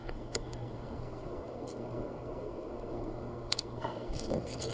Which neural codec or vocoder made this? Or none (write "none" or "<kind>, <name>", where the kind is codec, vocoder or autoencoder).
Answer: codec, SNAC